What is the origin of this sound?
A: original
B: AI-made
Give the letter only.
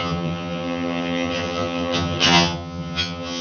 B